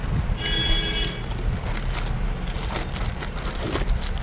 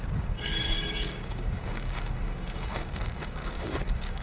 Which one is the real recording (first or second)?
first